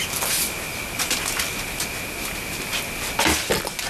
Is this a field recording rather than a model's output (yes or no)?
yes